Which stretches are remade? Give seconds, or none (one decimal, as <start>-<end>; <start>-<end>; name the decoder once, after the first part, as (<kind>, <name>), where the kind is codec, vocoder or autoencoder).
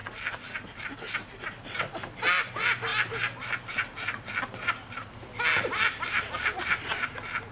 none